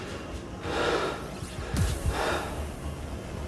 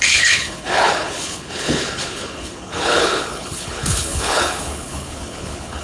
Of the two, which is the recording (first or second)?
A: first